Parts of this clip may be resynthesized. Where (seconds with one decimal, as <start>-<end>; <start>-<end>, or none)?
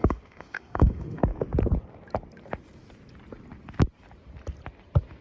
0.0-1.2